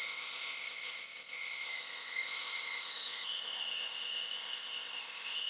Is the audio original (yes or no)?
no